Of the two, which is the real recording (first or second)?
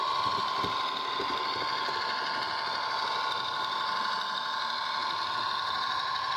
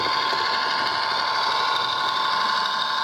second